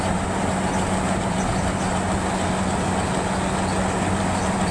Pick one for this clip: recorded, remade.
recorded